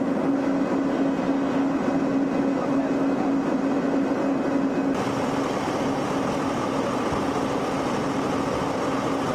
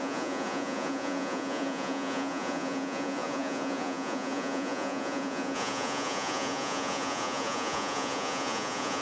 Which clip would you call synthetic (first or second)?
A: second